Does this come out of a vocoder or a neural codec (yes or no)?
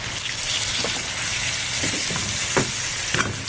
no